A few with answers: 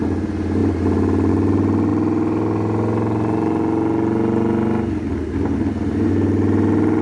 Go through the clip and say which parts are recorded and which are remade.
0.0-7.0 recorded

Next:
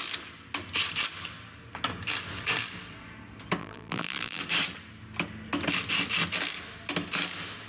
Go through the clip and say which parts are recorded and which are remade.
0.0-3.6 recorded; 3.6-4.4 remade; 4.4-7.7 recorded